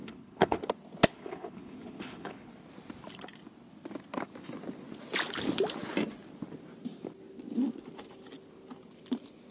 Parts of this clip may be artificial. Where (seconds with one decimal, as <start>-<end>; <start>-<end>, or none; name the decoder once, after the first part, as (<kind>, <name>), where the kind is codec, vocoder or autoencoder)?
0.0-0.6 (codec, HILCodec); 1.1-2.5